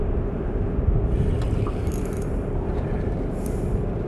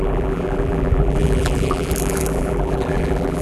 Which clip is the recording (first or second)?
first